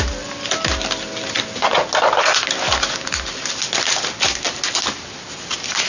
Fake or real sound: real